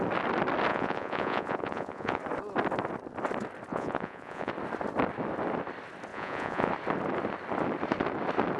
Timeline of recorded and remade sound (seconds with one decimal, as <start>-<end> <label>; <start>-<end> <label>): 0.0-0.7 recorded; 0.7-2.2 remade; 2.2-3.7 recorded; 3.7-4.5 remade; 4.5-6.1 recorded; 6.1-6.7 remade; 6.7-8.6 recorded